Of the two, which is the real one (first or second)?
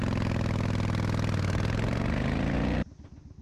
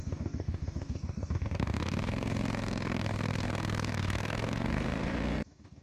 first